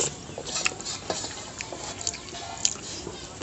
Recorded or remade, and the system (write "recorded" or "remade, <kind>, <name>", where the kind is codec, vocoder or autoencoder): recorded